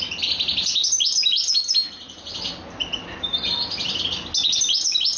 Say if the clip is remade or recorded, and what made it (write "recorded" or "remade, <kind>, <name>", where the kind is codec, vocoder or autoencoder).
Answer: recorded